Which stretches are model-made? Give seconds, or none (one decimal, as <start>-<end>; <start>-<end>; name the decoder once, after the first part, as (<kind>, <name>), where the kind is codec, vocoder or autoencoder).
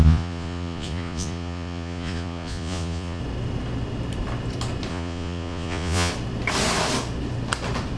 0.0-3.2 (vocoder, Vocos); 4.9-6.1